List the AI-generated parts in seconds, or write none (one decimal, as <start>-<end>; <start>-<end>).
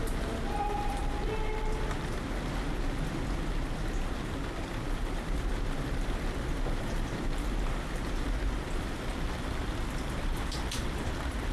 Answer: 0.0-1.0; 4.7-11.5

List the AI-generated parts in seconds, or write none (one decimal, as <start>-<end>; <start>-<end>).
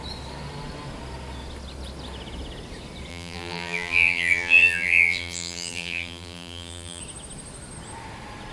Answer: 3.1-7.0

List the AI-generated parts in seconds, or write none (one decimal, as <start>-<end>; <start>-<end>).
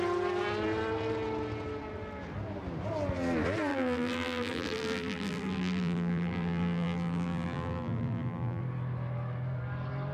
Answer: 3.7-8.6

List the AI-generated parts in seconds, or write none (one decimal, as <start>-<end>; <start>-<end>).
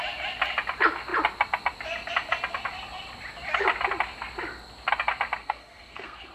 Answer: 5.4-6.3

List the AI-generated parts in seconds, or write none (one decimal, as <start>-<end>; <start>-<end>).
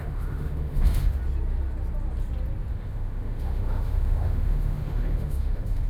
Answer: 0.0-1.2; 2.7-5.9